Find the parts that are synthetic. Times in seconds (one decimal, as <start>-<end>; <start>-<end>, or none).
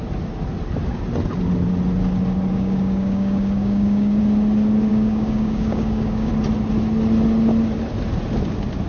2.5-4.2; 4.9-6.3